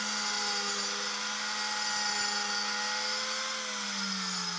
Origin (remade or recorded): recorded